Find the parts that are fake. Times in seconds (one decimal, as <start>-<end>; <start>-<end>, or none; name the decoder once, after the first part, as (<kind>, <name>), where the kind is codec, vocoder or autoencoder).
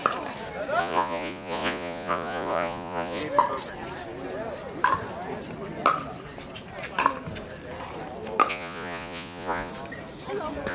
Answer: 0.8-3.2 (vocoder, Vocos); 8.5-9.7